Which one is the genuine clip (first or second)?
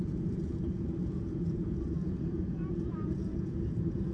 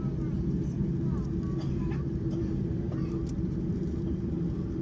second